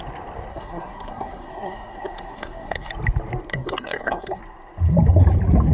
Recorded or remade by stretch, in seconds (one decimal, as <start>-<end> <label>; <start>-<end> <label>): 0.0-0.5 recorded; 0.5-2.9 remade; 2.9-3.5 recorded; 3.5-4.4 remade; 4.4-5.7 recorded